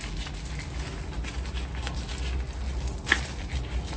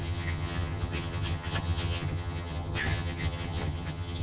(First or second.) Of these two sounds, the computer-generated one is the second